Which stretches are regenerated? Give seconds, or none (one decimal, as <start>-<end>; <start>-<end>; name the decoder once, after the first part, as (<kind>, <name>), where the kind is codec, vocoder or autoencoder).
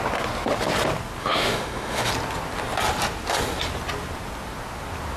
1.2-2.1 (autoencoder, DAC-VAE)